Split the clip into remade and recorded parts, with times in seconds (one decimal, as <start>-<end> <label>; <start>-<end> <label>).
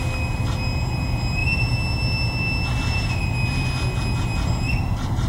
0.0-5.3 recorded